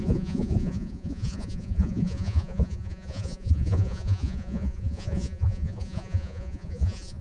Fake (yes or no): yes